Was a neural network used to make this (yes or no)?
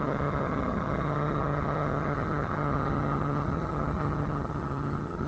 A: yes